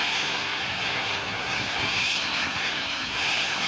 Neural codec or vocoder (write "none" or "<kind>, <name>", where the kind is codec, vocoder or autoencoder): codec, SNAC